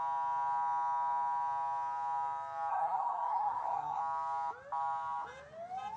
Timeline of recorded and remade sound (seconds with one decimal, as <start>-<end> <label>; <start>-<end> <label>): 0.0-2.7 recorded; 2.7-4.0 remade; 4.0-6.0 recorded